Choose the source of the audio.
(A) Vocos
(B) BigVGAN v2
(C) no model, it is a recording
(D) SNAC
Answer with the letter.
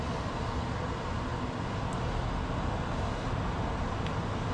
C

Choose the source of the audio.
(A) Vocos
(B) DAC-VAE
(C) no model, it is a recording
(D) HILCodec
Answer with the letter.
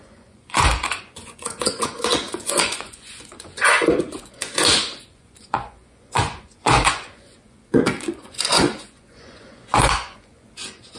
A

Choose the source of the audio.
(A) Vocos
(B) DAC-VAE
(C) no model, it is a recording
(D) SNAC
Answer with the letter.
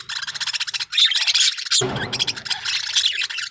C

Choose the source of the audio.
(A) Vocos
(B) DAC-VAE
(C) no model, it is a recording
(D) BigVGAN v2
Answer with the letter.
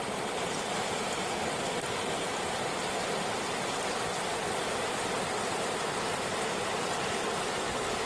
C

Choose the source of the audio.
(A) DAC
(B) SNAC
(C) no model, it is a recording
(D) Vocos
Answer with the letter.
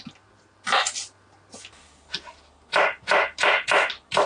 C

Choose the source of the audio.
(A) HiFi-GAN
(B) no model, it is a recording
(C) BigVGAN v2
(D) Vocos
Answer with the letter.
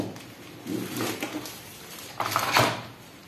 B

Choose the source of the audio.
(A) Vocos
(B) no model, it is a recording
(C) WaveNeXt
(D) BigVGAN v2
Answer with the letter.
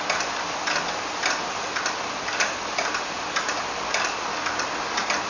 B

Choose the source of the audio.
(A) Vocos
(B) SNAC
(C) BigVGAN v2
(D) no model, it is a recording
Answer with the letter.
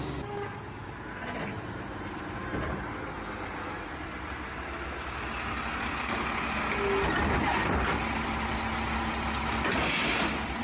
D